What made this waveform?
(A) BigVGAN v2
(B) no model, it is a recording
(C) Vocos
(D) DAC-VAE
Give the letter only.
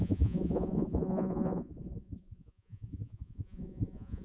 C